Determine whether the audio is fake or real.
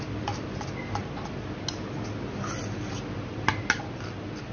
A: real